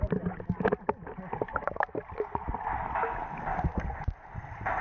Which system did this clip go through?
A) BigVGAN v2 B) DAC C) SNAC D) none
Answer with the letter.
D